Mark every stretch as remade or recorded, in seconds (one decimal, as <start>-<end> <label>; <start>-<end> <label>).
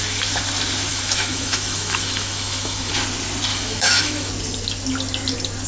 0.0-0.9 recorded; 0.9-2.9 remade; 2.9-3.5 recorded; 3.5-4.3 remade; 4.3-5.7 recorded